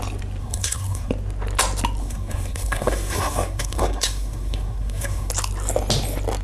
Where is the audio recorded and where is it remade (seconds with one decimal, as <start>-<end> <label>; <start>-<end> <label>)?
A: 0.0-0.4 recorded; 0.4-1.1 remade; 1.1-2.0 recorded; 2.0-5.3 remade; 5.3-6.4 recorded